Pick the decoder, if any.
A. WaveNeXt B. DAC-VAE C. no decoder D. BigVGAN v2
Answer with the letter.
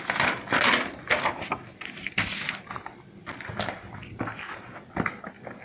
C